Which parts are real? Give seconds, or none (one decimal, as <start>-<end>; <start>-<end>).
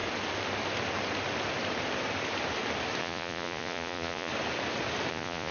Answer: 0.0-3.0; 4.3-5.1